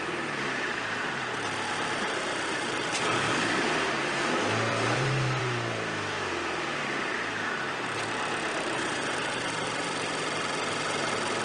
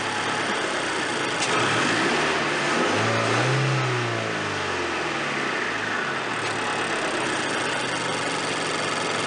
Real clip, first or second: second